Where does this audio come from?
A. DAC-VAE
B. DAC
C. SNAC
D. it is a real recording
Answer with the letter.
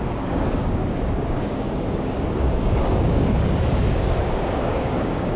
B